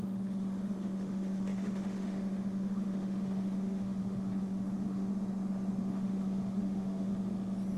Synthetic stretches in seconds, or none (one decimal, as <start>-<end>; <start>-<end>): 0.0-5.1; 5.8-7.1